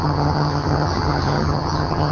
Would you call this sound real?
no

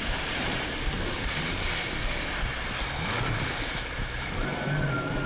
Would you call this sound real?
no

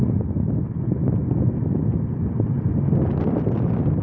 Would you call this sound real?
yes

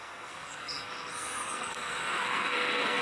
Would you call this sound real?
no